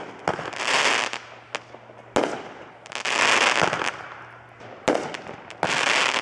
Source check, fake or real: real